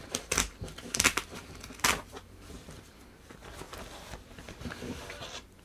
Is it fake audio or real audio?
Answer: fake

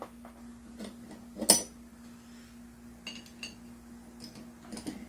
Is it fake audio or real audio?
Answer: real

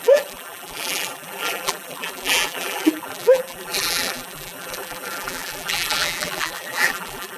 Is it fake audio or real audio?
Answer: fake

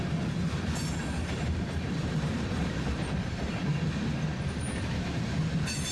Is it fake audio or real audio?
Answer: fake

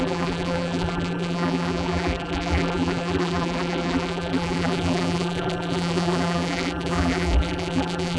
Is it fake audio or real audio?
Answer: fake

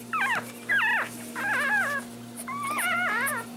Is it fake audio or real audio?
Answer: real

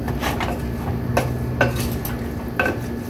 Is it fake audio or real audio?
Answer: real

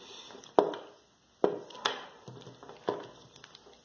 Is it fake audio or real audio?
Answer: real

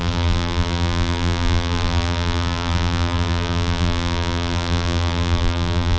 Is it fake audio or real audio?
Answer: fake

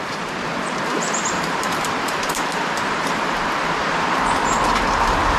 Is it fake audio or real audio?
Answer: fake